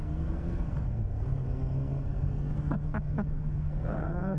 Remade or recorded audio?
remade